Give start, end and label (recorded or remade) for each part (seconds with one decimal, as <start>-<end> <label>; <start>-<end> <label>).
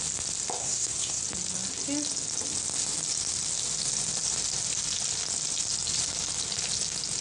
0.0-0.6 recorded; 0.6-1.2 remade; 1.2-7.2 recorded